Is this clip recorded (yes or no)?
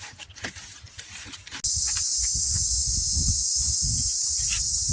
yes